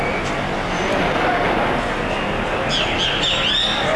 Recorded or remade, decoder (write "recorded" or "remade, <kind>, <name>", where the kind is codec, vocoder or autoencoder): recorded